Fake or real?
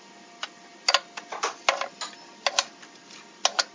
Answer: real